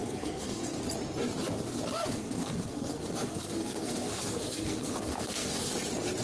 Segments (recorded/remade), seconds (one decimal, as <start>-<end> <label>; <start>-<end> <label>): 0.0-0.8 remade; 0.8-2.0 recorded; 2.0-5.7 remade; 5.7-6.2 recorded